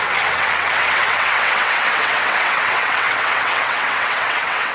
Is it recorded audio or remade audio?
remade